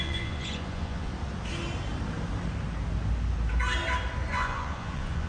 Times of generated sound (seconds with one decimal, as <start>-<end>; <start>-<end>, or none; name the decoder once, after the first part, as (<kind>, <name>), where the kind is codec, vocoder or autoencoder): 0.0-1.1 (vocoder, Vocos); 4.3-5.3